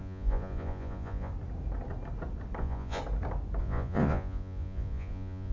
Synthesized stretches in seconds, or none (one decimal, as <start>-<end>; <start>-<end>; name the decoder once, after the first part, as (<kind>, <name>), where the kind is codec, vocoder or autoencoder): 0.0-1.3 (vocoder, Vocos); 2.6-3.0; 3.6-5.5